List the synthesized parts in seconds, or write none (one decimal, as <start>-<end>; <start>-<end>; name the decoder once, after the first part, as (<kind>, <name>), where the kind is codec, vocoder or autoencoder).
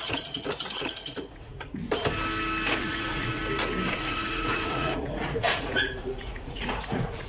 0.0-1.8 (vocoder, Vocos); 2.8-3.4; 3.9-7.3